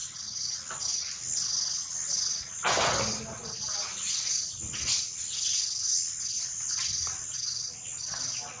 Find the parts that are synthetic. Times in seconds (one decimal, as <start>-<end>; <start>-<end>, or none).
none